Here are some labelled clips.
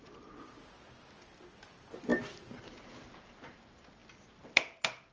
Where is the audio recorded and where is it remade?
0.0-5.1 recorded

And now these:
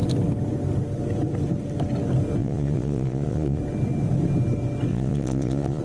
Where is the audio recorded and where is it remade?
0.0-2.4 recorded; 2.4-3.6 remade; 3.6-4.9 recorded; 4.9-5.8 remade

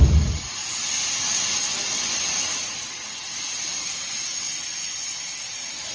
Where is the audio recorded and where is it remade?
0.0-5.9 recorded

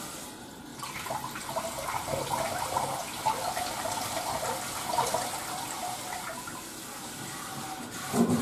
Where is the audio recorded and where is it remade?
0.0-8.4 recorded

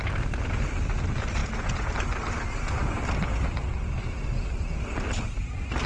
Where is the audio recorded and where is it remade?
0.0-1.4 recorded; 1.4-1.9 remade; 1.9-5.9 recorded

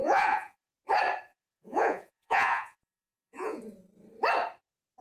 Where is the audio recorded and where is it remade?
0.0-0.7 remade; 0.7-1.3 recorded; 1.3-3.6 remade; 3.6-5.0 recorded

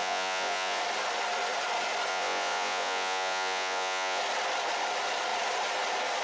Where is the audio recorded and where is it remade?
0.0-0.8 remade; 0.8-2.1 recorded; 2.1-4.2 remade; 4.2-6.2 recorded